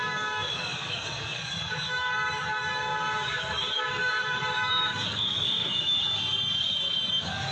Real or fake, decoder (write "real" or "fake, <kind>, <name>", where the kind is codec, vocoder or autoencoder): fake, codec, DAC